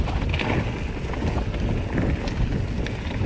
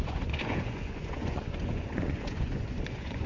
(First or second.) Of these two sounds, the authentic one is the first